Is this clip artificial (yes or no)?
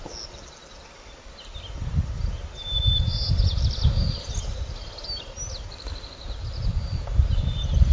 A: no